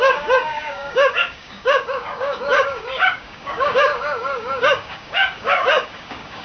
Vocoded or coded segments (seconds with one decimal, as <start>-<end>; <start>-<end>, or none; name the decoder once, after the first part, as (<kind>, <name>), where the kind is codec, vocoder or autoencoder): 0.0-6.4 (codec, DAC)